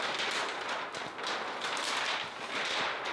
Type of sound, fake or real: real